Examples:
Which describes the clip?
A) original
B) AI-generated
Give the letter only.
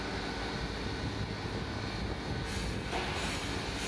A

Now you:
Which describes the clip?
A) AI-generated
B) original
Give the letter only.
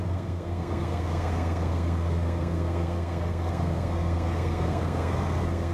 A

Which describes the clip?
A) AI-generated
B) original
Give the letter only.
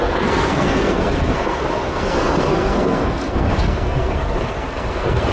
A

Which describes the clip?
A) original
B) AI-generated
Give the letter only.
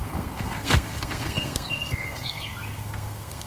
B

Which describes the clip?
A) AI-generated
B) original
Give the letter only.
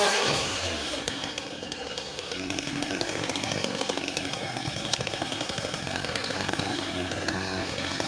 A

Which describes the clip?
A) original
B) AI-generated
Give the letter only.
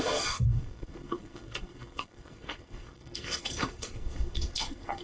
B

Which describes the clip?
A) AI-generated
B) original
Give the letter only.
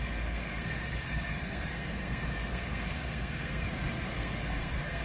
A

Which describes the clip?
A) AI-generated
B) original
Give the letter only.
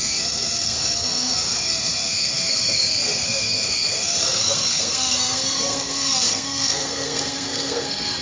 A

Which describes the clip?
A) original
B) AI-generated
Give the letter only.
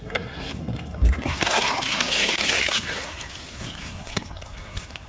B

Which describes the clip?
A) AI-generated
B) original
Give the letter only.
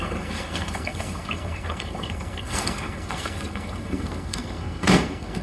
A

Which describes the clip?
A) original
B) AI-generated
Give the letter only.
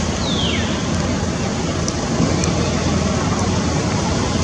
A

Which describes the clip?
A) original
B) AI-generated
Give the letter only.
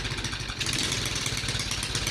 A